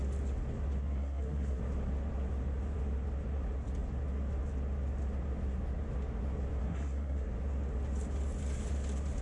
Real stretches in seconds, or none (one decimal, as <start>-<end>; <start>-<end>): 0.0-0.8; 1.6-6.6; 7.3-9.2